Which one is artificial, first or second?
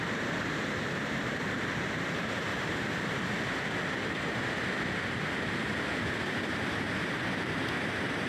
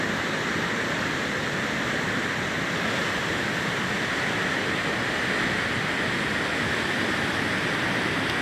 first